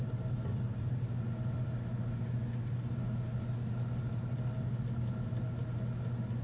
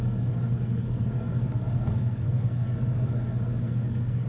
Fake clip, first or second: second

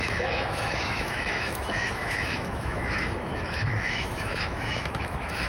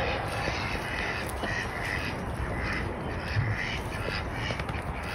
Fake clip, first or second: first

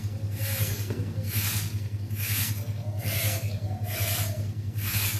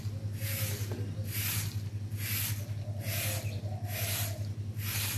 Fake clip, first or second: first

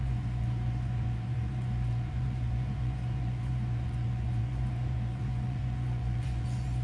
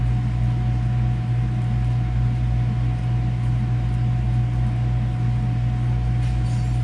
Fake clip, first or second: first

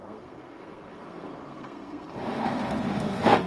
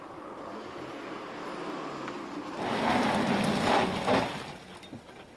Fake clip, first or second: first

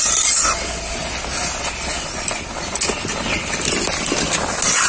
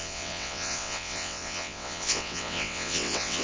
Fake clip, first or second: second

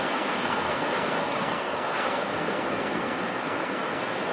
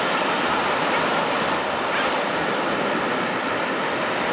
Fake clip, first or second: first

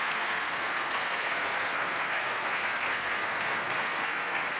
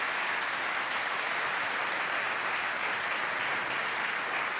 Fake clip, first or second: first